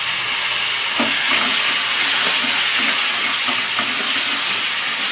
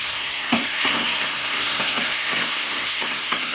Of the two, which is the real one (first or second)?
first